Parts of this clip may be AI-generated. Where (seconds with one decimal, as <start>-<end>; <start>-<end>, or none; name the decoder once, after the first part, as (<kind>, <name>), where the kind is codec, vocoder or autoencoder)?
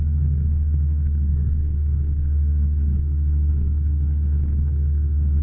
0.0-5.4 (codec, SNAC)